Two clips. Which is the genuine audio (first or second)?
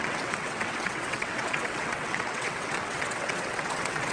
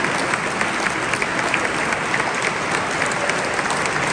second